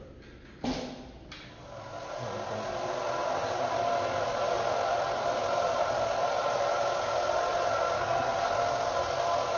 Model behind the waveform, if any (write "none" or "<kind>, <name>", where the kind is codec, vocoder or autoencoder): none